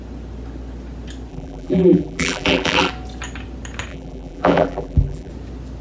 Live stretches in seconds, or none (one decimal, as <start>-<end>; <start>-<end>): 0.0-1.3; 2.9-3.9; 5.3-5.8